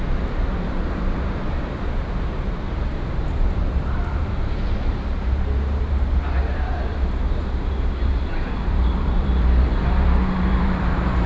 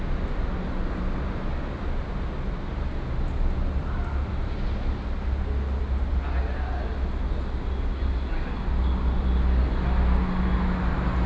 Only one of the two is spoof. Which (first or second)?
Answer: first